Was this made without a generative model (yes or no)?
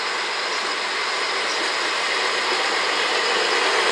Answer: yes